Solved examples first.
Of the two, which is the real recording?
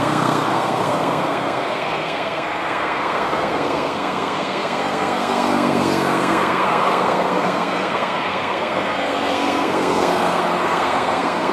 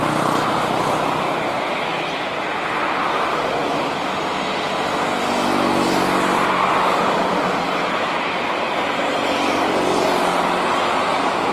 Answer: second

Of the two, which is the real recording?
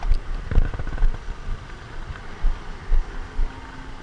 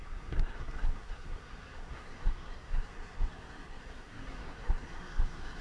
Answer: first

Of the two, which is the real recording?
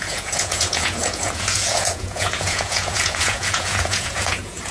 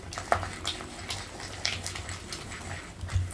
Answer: second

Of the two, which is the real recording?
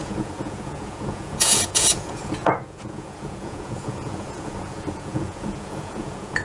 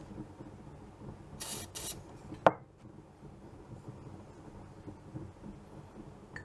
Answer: second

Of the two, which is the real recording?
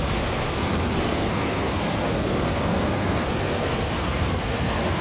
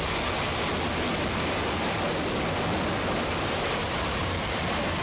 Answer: second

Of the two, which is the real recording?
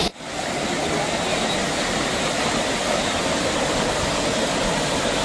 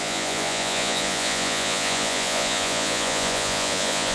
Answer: first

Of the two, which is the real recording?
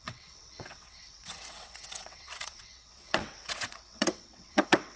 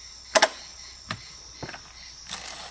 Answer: second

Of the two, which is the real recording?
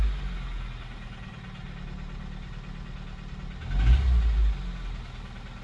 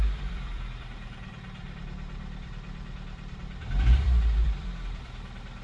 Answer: first